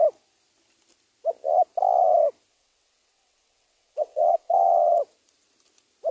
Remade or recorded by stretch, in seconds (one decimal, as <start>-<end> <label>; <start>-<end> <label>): 0.0-2.5 recorded; 2.5-5.0 remade; 5.0-6.1 recorded